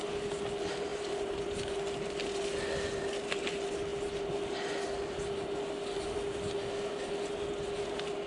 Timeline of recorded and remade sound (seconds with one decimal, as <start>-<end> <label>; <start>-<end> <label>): 0.0-0.9 recorded; 0.9-1.4 remade; 1.4-8.3 recorded